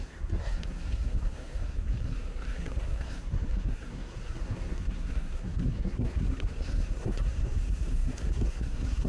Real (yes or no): no